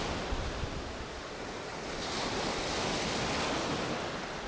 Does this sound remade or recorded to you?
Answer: recorded